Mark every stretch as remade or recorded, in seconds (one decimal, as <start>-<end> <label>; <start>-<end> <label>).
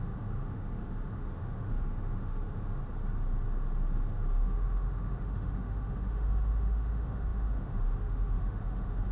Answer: 0.0-2.8 remade; 2.8-3.9 recorded; 3.9-9.1 remade